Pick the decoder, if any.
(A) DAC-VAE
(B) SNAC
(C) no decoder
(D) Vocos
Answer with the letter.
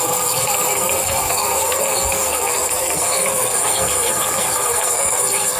B